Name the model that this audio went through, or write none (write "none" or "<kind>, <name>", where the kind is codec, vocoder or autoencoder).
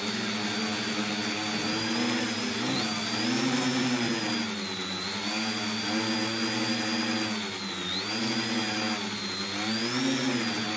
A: none